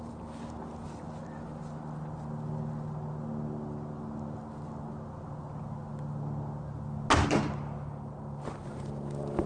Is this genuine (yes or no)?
yes